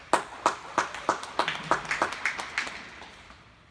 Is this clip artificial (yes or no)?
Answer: no